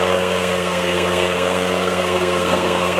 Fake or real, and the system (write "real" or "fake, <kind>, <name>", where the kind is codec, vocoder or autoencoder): fake, codec, SNAC